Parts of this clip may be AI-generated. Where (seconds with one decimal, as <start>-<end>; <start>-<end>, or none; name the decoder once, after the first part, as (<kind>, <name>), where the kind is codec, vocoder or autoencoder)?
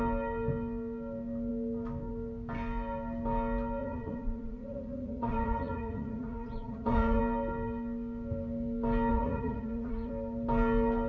3.8-7.2 (vocoder, Vocos); 9.1-10.1